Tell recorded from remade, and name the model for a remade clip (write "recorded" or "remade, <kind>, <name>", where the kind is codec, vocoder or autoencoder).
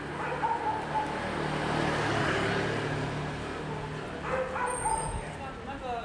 recorded